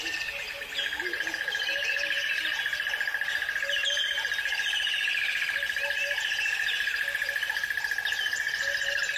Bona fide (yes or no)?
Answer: yes